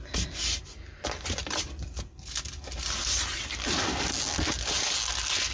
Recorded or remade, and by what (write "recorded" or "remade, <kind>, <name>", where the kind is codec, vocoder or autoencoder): recorded